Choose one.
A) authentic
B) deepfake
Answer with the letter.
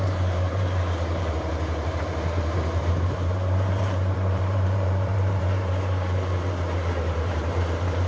B